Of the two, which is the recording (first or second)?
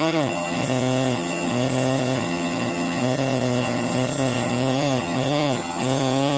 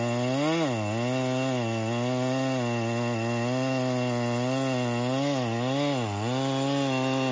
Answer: second